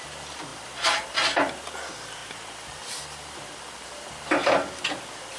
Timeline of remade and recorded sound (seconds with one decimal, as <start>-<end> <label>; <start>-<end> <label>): 0.0-5.4 recorded